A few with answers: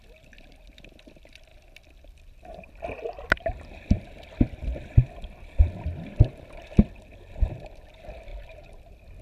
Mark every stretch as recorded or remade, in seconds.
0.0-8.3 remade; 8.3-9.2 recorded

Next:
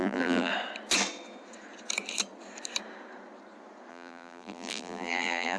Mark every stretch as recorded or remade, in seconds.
0.0-0.5 remade; 0.5-3.9 recorded; 3.9-5.6 remade

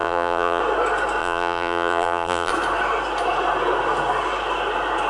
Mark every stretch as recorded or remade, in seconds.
0.0-0.6 remade; 0.6-1.2 recorded; 1.2-2.5 remade; 2.5-5.1 recorded